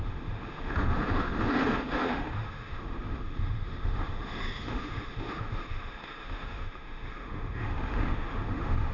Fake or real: fake